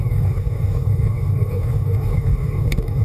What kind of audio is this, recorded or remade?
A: remade